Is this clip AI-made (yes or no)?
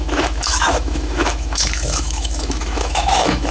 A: yes